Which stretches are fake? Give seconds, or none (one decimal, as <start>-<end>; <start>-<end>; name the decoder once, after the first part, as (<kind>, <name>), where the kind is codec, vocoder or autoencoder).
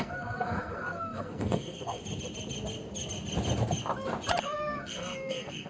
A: 0.0-2.0 (codec, SNAC); 4.4-5.7